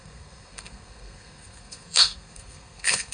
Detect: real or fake fake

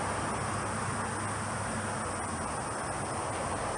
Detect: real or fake real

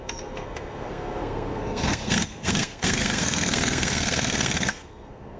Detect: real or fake fake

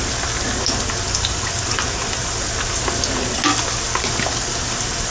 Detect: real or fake real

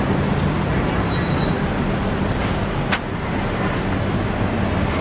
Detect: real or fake real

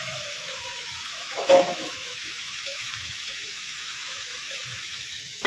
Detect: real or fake fake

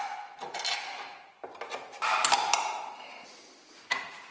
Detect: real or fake real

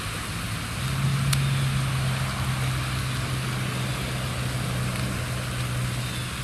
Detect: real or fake real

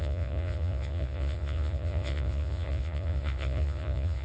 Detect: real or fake fake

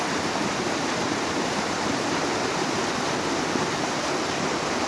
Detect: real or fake fake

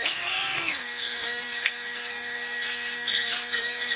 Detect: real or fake fake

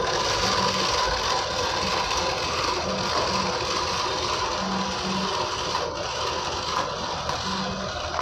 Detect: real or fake real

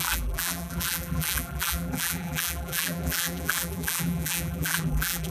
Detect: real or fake fake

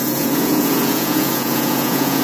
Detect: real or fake fake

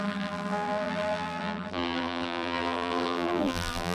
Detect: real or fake fake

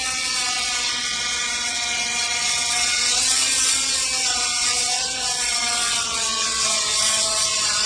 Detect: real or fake fake